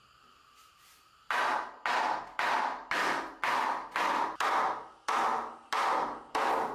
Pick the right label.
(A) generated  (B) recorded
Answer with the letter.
B